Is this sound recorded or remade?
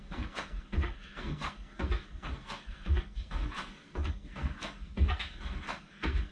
remade